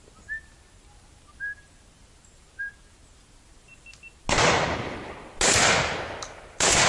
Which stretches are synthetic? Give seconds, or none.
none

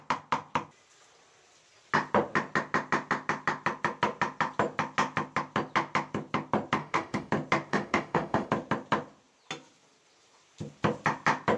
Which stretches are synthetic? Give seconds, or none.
6.8-7.3 (autoencoder, DAC-VAE); 7.7-8.5